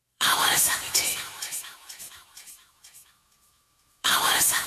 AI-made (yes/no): yes